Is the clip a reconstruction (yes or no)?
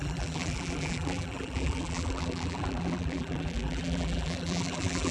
yes